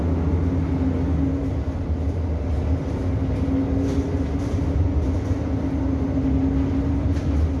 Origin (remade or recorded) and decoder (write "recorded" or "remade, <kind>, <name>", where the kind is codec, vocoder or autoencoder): recorded